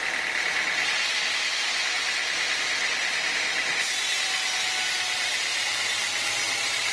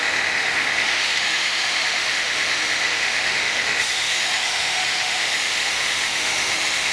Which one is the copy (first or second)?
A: second